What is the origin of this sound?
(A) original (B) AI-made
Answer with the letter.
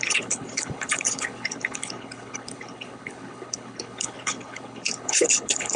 B